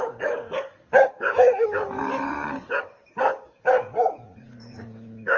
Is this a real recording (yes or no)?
no